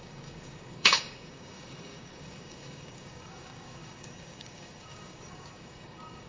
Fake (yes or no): yes